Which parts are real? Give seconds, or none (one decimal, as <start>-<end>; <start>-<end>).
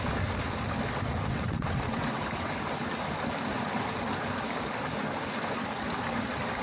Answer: 0.0-1.3; 2.5-6.6